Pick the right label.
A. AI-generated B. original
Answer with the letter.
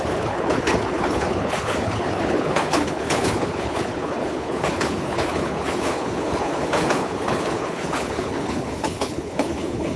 A